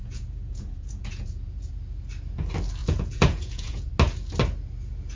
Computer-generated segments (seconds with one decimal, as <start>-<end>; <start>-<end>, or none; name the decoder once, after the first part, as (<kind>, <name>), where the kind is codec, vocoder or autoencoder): 0.0-1.7 (vocoder, Vocos); 2.8-3.9